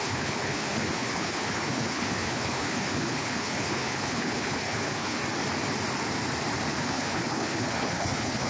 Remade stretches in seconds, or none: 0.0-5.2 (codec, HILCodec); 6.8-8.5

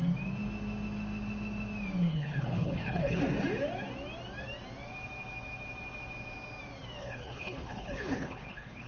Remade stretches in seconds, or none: 2.0-3.2 (codec, HILCodec); 7.0-8.9

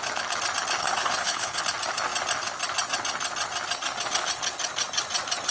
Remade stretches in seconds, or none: 0.8-1.6 (codec, HILCodec)

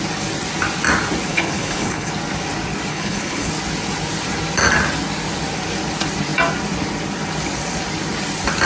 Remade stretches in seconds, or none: 1.3-2.1 (codec, HILCodec); 2.9-3.5

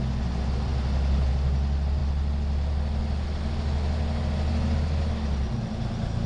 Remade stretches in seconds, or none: none